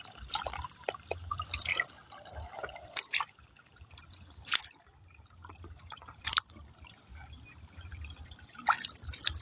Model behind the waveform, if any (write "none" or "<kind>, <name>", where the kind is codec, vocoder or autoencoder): none